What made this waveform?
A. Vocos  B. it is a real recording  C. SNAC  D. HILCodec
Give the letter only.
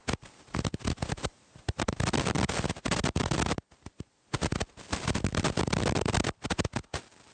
B